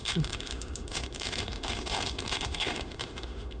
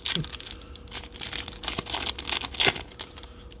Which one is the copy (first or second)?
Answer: first